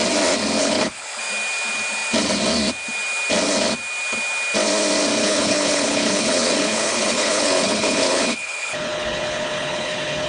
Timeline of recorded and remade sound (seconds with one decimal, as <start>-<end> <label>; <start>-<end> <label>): 0.0-0.6 recorded; 0.6-1.2 remade; 1.2-5.2 recorded; 5.2-10.3 remade